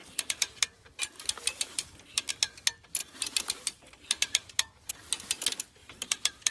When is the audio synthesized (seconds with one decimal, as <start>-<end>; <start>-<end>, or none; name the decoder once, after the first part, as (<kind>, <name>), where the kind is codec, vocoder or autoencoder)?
0.0-2.3 (vocoder, BigVGAN v2); 3.0-4.9; 5.8-6.5